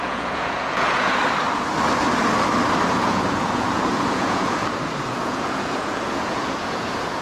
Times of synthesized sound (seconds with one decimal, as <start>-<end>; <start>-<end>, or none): 0.0-1.2; 2.9-4.6; 5.2-7.2